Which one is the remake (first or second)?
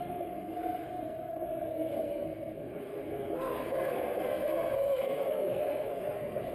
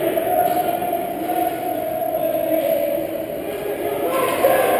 first